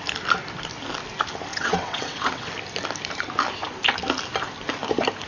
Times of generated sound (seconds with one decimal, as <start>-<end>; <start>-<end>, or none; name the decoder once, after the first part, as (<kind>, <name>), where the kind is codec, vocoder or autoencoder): 1.5-2.5 (vocoder, WaveNeXt)